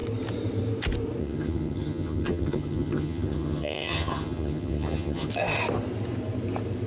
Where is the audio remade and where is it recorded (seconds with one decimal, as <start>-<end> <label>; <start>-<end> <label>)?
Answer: 0.0-1.2 recorded; 1.2-5.3 remade; 5.3-6.9 recorded